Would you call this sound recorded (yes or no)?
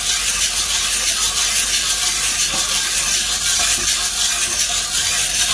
yes